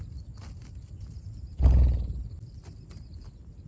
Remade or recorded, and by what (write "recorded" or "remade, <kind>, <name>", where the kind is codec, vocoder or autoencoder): recorded